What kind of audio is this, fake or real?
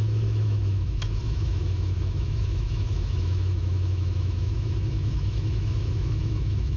fake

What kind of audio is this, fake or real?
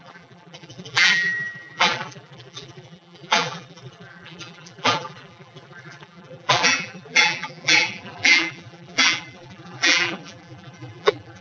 fake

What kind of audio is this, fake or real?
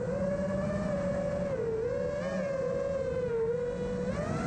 real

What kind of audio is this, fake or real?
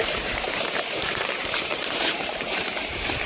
fake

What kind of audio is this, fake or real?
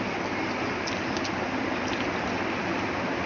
real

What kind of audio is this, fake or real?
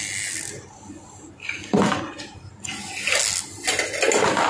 real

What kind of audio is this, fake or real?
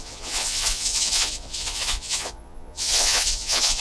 fake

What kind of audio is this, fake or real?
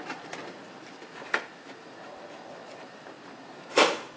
real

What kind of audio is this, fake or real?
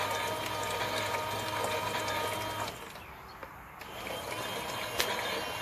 real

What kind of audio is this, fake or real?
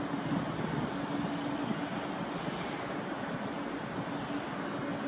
real